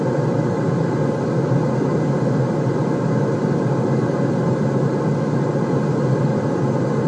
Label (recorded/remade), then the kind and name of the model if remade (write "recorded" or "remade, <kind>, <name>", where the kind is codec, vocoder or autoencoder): recorded